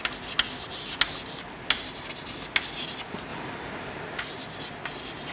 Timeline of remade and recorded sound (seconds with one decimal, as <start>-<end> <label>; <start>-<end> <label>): 0.0-5.3 recorded